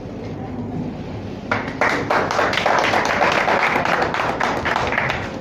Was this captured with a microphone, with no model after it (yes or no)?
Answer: yes